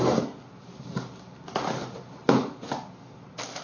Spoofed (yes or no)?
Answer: no